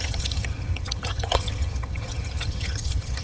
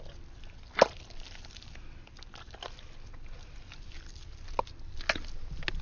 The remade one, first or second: first